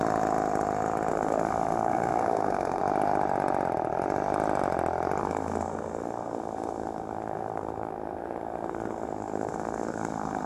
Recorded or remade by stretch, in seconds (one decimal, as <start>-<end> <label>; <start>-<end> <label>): 0.0-1.1 recorded; 1.1-2.8 remade; 2.8-5.2 recorded; 5.2-10.5 remade